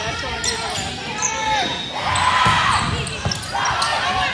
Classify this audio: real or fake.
real